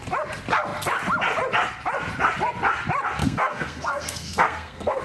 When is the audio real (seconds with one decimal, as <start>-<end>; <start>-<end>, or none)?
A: 0.0-3.2